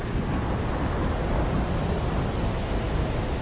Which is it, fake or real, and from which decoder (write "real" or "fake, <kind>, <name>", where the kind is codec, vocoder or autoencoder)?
real